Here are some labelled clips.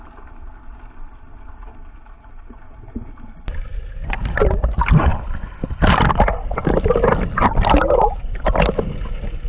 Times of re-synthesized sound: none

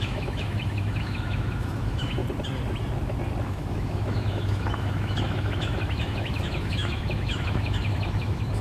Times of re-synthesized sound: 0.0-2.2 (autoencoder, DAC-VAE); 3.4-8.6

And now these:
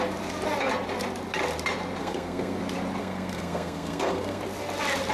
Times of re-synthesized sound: 2.0-2.6 (codec, SNAC); 3.0-4.4

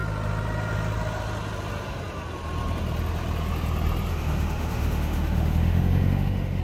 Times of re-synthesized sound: 4.1-6.6 (autoencoder, DAC-VAE)